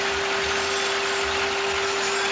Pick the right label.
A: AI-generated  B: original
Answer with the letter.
B